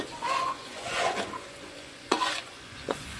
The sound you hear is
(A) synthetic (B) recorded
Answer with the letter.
A